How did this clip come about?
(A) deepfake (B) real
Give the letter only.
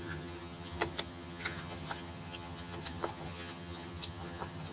A